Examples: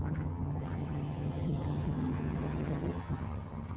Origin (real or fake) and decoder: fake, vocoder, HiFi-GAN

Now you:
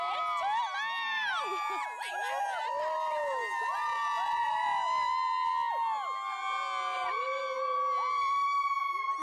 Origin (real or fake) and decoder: real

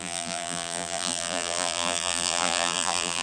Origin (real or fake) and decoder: fake, vocoder, BigVGAN v2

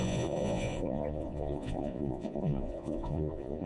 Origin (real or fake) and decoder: fake, vocoder, Vocos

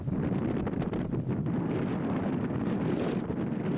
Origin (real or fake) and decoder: real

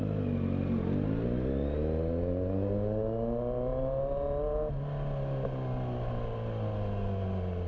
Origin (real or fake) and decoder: real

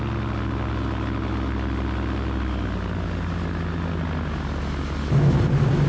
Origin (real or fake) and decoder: real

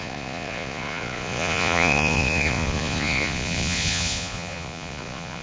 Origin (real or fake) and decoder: fake, vocoder, Vocos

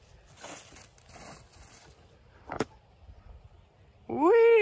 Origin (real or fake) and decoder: real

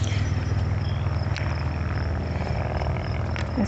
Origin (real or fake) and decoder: real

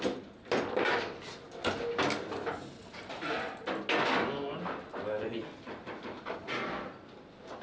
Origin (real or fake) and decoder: real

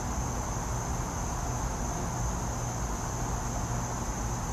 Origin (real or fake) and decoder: real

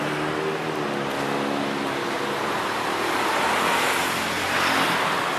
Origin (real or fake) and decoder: real